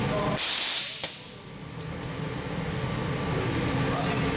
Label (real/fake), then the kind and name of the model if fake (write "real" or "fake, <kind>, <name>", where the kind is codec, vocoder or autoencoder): real